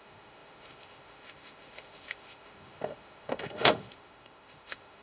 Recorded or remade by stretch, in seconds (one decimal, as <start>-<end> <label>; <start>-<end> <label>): 0.0-5.0 remade

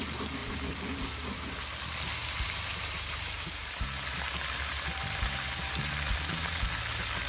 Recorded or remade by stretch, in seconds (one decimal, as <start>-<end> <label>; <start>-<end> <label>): 0.0-0.4 recorded; 0.4-1.5 remade; 1.5-2.2 recorded; 2.2-6.6 remade; 6.6-7.3 recorded

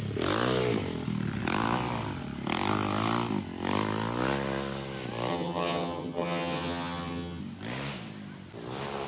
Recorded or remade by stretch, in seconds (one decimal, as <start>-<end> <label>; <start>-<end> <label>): 0.0-5.3 recorded; 5.3-7.4 remade; 7.4-9.1 recorded